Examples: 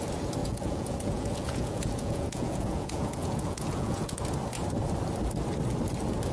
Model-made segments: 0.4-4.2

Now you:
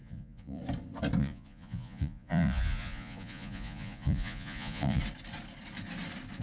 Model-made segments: 0.0-0.6; 1.2-5.0

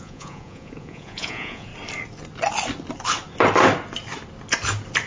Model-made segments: 0.0-1.7

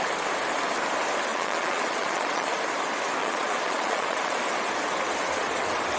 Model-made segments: 1.3-2.6; 3.2-4.4

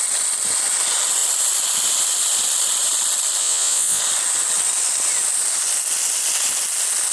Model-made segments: 3.4-4.0

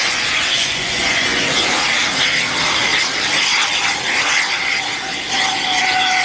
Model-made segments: 0.0-1.8

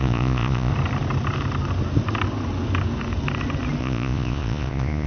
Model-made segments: 0.0-0.7; 3.8-5.1

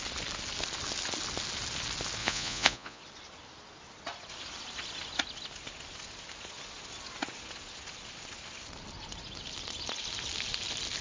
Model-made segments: 2.2-3.0